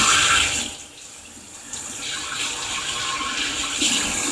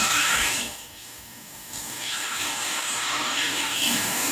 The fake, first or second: second